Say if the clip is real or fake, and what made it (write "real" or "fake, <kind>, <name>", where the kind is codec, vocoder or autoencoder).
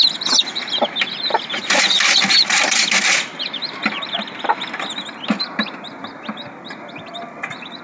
real